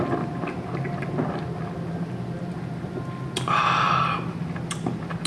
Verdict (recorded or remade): recorded